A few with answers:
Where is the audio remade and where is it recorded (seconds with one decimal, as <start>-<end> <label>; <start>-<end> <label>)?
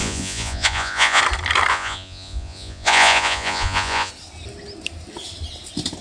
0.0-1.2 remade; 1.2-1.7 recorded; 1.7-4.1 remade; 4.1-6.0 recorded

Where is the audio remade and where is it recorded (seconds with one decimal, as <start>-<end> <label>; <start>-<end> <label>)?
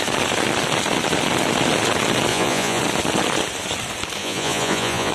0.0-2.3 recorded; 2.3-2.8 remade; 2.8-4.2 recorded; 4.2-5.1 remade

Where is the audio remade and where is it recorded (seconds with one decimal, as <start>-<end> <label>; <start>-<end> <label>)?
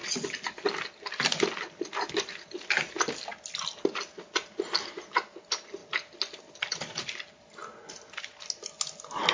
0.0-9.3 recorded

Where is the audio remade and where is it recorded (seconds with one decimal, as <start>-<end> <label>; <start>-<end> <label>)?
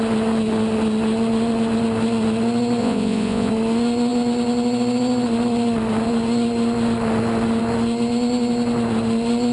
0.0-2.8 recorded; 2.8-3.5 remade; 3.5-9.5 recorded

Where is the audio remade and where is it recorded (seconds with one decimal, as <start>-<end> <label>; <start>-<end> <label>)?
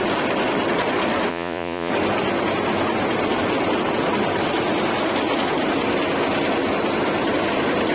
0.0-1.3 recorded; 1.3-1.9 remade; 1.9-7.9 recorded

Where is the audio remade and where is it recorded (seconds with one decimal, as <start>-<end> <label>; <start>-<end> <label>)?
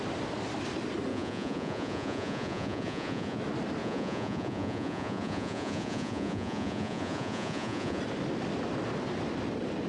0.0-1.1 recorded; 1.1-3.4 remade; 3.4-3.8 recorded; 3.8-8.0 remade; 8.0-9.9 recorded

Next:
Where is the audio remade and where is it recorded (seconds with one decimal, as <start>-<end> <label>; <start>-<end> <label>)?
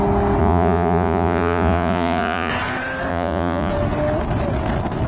0.0-0.4 recorded; 0.4-2.5 remade; 2.5-3.1 recorded; 3.1-3.7 remade; 3.7-5.1 recorded